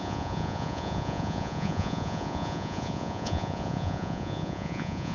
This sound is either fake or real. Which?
fake